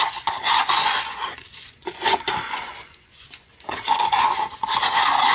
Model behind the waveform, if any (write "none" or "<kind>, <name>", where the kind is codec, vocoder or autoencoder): vocoder, Vocos